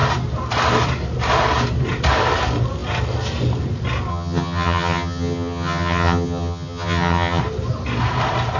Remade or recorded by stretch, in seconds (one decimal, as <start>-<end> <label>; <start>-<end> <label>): 0.0-4.1 recorded; 4.1-7.4 remade; 7.4-8.6 recorded

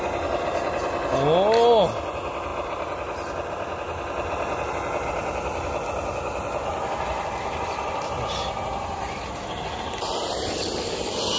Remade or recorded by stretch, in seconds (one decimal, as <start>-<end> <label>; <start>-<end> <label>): 0.0-11.4 recorded

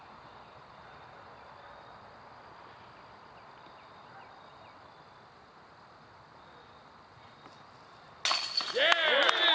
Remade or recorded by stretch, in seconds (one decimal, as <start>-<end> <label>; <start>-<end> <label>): 0.0-9.5 recorded

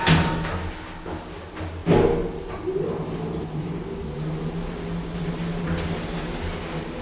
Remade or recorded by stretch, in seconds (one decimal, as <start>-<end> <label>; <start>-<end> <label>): 0.0-7.0 recorded

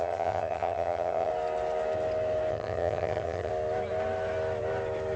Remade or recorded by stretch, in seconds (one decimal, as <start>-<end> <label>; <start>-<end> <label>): 0.0-1.3 remade; 1.3-2.5 recorded; 2.5-3.5 remade; 3.5-5.2 recorded

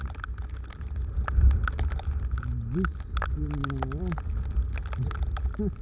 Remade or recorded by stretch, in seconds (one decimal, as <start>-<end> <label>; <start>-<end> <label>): 0.0-5.8 recorded